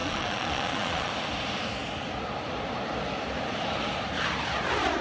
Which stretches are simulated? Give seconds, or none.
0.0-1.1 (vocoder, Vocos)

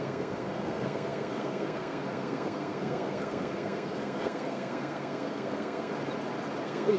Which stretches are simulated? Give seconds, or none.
0.0-5.9 (codec, SNAC); 6.6-7.0